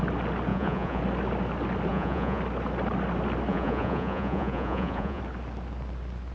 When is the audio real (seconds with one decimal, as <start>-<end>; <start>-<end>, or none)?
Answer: 0.0-0.5; 1.0-1.9; 2.4-3.5; 5.2-6.3